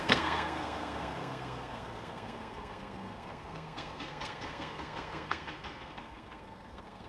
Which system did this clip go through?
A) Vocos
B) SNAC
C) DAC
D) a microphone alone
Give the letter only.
B